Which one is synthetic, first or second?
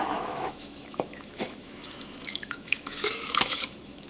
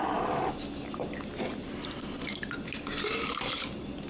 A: first